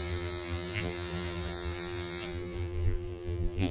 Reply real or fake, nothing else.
fake